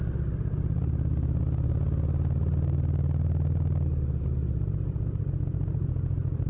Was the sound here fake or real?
real